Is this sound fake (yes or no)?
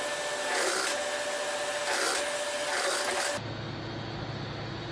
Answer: no